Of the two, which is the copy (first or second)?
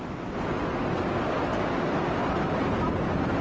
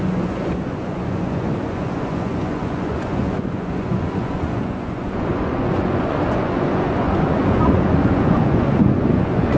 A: second